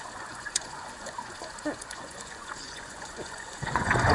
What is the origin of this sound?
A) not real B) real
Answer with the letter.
A